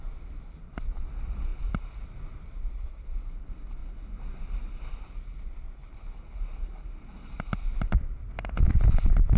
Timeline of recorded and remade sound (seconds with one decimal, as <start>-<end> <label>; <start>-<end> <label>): 0.0-3.8 remade; 3.8-8.8 recorded; 8.8-9.4 remade